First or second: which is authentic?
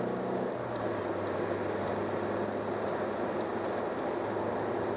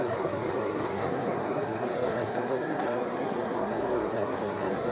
first